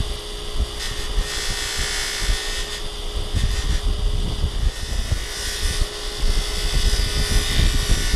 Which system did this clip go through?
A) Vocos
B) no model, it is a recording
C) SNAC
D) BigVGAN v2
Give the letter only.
B